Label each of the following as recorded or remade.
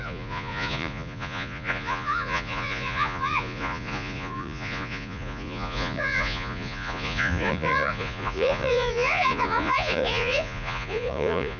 remade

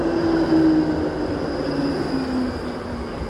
recorded